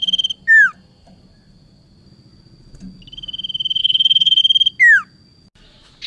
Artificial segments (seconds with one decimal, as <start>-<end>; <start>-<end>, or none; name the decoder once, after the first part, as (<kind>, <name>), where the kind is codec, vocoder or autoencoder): 3.8-4.4 (codec, HILCodec)